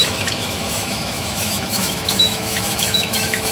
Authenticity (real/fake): fake